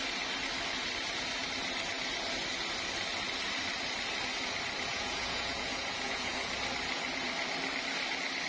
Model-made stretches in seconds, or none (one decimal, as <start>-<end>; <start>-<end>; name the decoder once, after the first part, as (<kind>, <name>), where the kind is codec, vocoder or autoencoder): 4.9-6.5 (vocoder, Vocos)

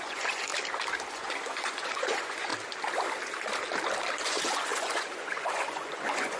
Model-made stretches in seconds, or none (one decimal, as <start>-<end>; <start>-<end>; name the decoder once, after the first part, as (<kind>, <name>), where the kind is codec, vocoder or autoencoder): 0.0-0.5 (vocoder, Vocos); 1.1-2.5; 4.1-6.4

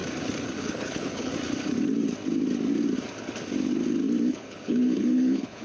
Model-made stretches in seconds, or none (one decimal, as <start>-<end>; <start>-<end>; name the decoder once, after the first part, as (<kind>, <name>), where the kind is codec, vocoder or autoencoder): 0.6-1.3 (codec, HILCodec); 4.3-5.6

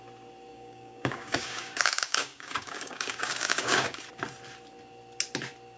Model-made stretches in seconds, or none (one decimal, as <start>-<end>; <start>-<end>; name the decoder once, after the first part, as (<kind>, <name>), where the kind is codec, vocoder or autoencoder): 0.5-4.0 (codec, DAC)

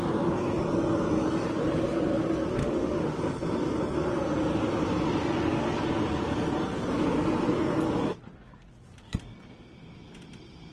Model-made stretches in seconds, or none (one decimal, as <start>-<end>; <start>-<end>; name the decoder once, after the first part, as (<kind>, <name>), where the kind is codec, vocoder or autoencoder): 2.6-3.2 (autoencoder, DAC-VAE)

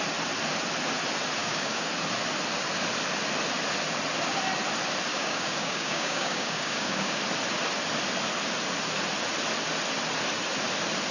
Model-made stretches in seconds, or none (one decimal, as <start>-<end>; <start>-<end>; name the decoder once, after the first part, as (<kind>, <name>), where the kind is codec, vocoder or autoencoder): 1.4-1.9 (codec, DAC); 5.1-7.2